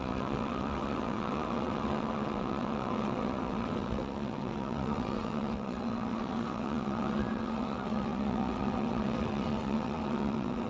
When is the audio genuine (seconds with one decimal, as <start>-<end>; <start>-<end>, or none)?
none